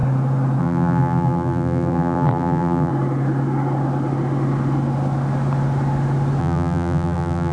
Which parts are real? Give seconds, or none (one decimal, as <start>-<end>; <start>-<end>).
0.0-0.6; 2.9-6.4